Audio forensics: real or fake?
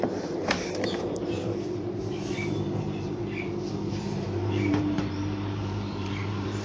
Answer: fake